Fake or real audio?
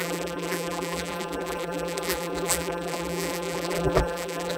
fake